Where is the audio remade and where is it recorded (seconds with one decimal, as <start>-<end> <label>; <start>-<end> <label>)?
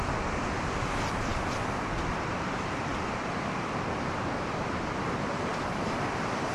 0.0-6.5 remade